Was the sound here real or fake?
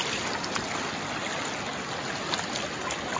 real